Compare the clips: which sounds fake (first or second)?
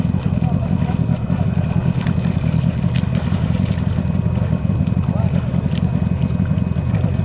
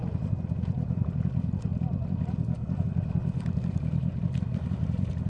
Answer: second